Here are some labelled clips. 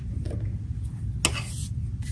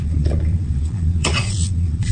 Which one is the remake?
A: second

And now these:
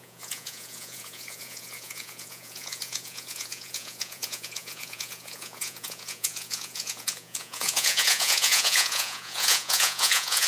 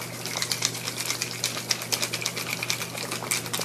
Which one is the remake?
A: first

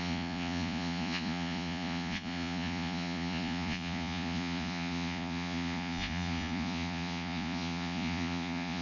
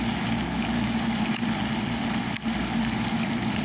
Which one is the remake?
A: first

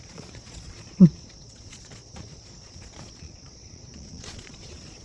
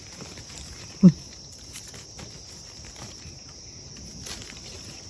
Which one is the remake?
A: first